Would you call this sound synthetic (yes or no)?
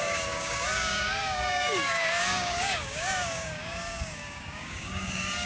yes